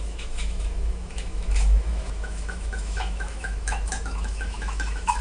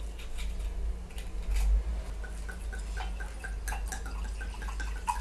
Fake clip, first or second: first